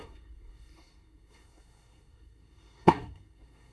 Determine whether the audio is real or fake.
fake